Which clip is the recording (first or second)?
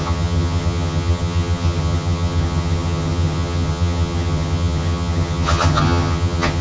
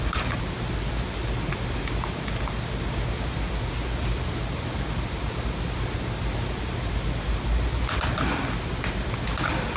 second